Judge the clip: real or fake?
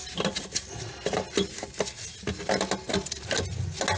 real